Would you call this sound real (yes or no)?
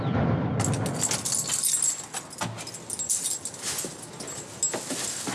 yes